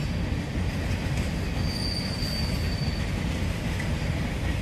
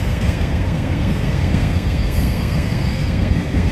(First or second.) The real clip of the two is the first